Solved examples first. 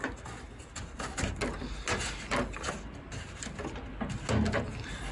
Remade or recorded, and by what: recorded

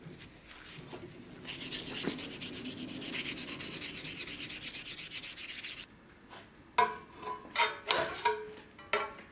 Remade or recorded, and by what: recorded